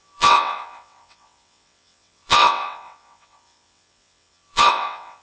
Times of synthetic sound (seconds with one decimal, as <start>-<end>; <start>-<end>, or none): 0.0-5.2